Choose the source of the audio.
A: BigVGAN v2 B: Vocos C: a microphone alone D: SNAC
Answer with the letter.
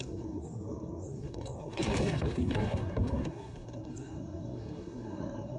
D